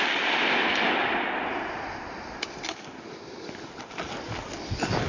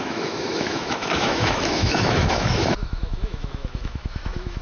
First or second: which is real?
first